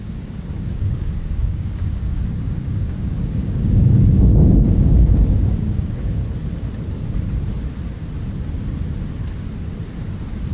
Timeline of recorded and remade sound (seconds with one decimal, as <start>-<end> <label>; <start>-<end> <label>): 0.0-6.2 remade; 6.2-10.5 recorded